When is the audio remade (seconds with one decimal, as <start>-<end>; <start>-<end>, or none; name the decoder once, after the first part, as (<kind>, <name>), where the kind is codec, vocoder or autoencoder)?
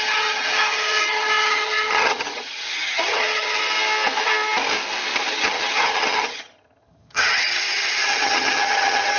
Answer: 0.0-3.6 (vocoder, HiFi-GAN); 5.3-9.2